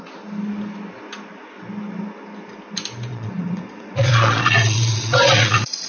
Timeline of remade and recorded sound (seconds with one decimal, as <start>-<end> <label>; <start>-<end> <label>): 0.0-3.1 recorded; 3.1-5.9 remade